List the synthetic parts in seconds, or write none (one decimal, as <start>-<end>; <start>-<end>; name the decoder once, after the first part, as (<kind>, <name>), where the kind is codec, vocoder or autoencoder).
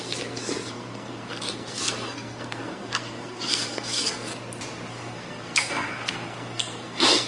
0.0-4.3 (codec, SNAC); 4.9-7.3